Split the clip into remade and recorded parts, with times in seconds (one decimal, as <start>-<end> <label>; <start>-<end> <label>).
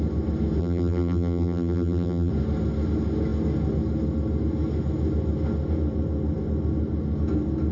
0.0-0.6 recorded; 0.6-2.3 remade; 2.3-7.7 recorded